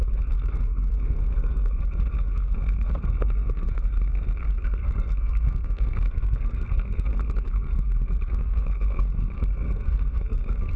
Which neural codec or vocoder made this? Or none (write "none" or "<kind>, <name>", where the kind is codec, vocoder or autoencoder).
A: codec, SNAC